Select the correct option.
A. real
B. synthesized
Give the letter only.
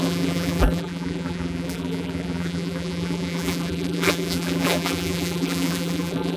B